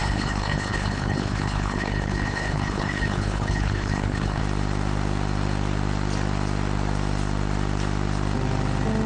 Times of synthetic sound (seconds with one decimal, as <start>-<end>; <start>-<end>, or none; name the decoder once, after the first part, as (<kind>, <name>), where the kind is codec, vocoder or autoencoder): 0.0-4.4 (codec, HILCodec)